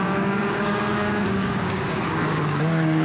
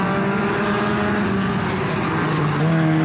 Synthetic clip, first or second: first